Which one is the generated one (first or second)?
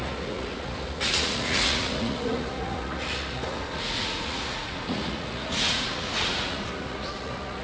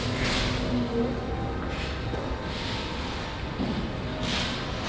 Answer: first